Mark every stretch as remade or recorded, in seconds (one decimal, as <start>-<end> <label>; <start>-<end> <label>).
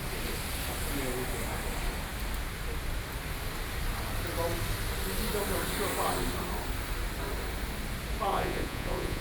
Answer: 0.0-8.3 recorded; 8.3-9.2 remade